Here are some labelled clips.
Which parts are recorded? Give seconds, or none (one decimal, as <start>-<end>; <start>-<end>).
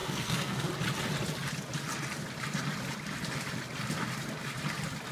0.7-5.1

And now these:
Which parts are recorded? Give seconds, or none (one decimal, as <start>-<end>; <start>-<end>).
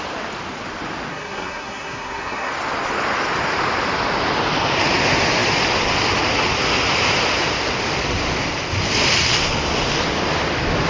0.0-1.1; 2.5-10.9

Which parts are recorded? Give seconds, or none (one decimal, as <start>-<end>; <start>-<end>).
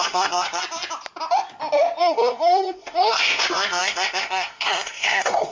0.6-2.0